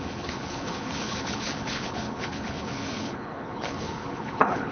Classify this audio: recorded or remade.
remade